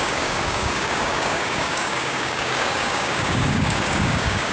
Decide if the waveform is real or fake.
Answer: fake